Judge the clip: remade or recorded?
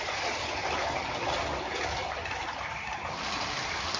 recorded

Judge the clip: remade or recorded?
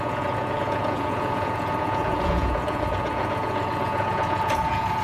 remade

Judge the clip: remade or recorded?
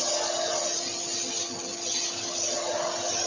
recorded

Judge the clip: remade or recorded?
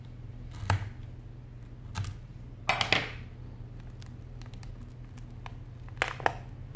recorded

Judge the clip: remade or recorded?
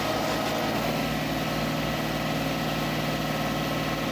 recorded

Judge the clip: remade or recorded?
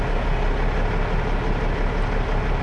recorded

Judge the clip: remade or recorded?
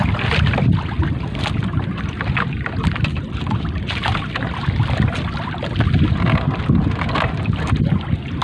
recorded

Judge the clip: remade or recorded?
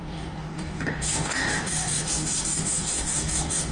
remade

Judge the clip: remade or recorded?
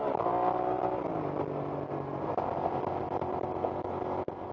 recorded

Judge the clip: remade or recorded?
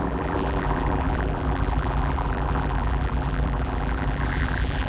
remade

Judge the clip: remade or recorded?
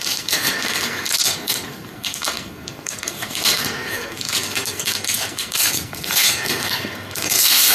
remade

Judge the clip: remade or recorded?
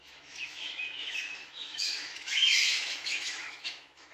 remade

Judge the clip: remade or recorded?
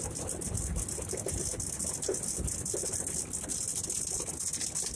recorded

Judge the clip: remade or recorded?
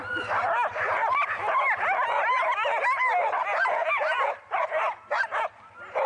recorded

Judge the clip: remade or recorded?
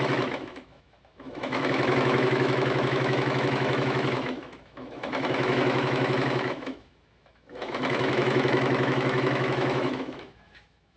remade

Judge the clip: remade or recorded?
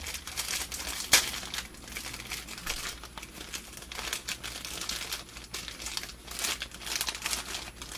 recorded